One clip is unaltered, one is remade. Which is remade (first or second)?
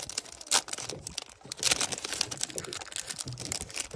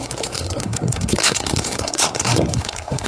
second